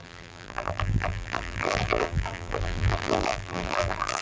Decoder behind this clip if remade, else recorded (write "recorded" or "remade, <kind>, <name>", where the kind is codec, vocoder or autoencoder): remade, vocoder, BigVGAN v2